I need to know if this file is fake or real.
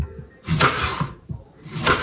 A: real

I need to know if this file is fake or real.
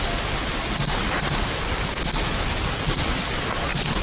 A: real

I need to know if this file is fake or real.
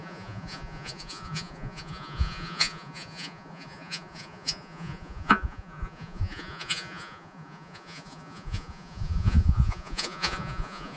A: fake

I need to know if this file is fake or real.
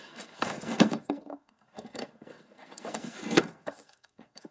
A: fake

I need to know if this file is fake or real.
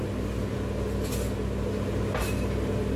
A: real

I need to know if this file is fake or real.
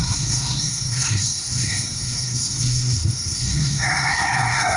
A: fake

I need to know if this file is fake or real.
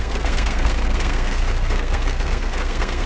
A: fake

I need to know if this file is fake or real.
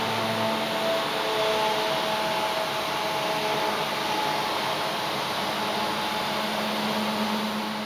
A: real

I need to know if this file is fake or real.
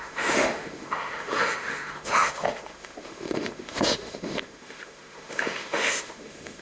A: fake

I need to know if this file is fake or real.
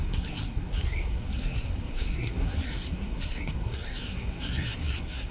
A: fake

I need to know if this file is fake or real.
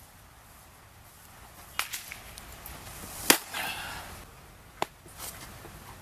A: real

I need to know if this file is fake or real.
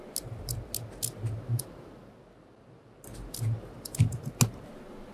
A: real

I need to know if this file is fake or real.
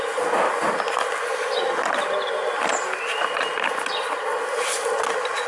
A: real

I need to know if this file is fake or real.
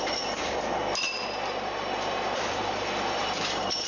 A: fake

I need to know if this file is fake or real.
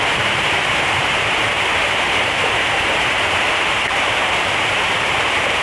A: fake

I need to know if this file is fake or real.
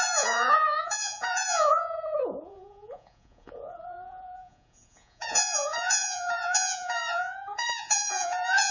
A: fake